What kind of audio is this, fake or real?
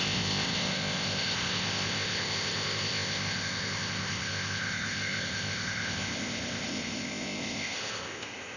fake